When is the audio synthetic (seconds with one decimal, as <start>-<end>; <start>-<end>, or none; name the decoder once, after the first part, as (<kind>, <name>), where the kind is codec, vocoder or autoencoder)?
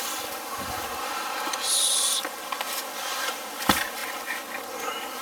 none